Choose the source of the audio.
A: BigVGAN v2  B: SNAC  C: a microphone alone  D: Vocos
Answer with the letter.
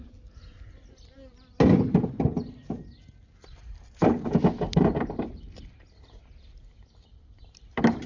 C